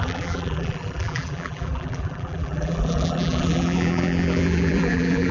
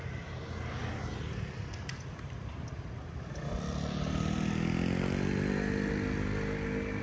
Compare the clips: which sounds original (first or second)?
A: second